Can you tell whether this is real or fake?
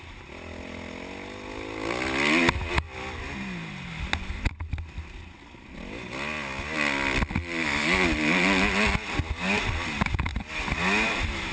real